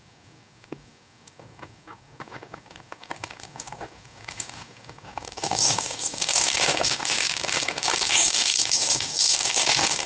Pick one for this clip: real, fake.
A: fake